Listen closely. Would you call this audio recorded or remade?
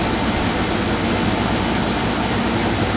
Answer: recorded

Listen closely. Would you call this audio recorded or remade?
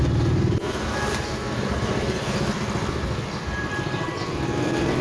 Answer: recorded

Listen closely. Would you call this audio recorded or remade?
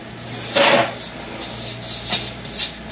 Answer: recorded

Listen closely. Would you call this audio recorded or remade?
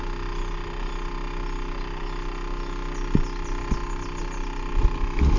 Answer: recorded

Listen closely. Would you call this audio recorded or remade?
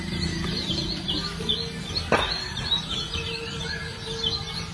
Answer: recorded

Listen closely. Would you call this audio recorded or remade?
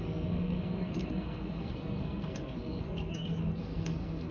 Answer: remade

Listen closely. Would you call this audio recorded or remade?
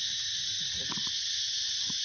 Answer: recorded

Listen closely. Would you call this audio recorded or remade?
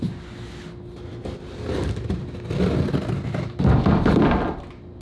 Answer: recorded